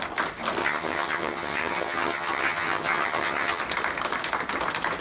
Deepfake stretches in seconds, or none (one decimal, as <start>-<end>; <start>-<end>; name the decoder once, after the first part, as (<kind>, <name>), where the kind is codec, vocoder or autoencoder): 0.6-3.6 (vocoder, HiFi-GAN)